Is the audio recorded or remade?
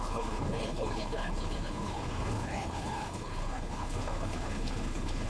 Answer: remade